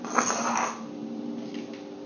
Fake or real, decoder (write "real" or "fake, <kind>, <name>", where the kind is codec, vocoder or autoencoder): real